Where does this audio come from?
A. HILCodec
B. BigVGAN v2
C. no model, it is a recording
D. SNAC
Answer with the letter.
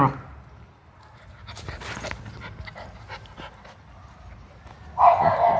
C